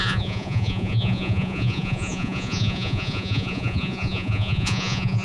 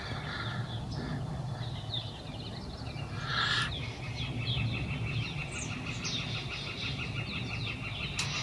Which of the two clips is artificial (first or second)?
first